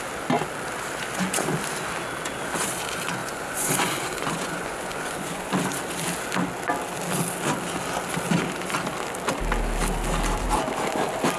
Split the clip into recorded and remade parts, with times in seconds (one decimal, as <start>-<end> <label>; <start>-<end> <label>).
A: 0.0-3.2 recorded; 3.2-5.5 remade; 5.5-11.4 recorded